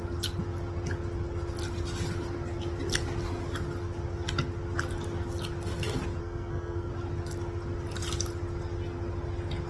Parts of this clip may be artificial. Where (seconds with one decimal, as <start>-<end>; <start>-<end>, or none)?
6.2-6.9